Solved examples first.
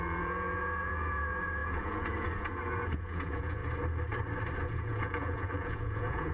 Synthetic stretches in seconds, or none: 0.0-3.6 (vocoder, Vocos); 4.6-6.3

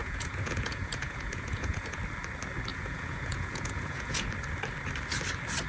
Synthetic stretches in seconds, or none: 0.0-2.0 (vocoder, Vocos); 2.7-4.3